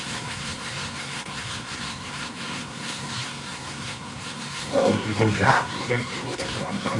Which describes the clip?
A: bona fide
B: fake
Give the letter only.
B